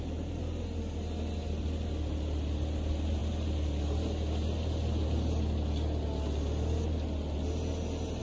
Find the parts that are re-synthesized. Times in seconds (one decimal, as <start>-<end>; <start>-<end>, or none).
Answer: none